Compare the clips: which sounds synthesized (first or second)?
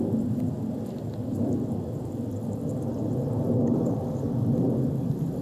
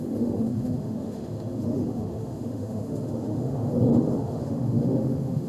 second